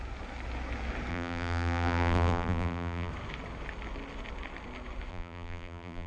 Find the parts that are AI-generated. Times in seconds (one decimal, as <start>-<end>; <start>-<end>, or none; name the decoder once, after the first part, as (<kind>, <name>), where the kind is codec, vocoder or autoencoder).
1.1-3.1 (vocoder, BigVGAN v2); 5.1-6.1